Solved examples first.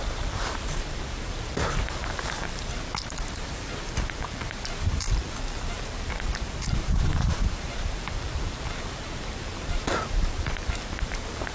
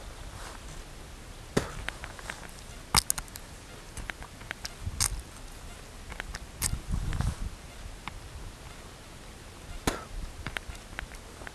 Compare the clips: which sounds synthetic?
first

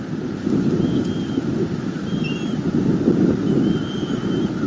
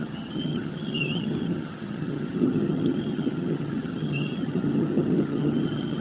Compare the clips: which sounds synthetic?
second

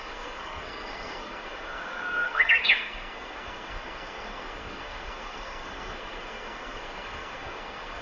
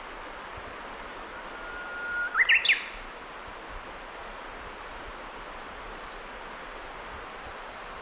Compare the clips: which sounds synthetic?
first